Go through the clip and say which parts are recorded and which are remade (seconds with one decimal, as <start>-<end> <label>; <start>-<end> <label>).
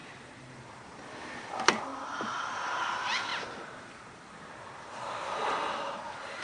0.0-6.4 remade